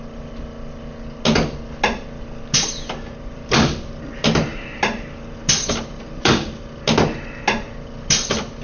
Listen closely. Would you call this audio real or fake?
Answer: real